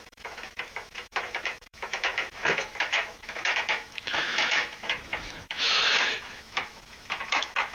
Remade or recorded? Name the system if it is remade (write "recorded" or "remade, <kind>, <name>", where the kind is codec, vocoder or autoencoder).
remade, autoencoder, DAC-VAE